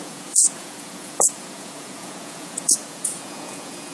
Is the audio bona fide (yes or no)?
no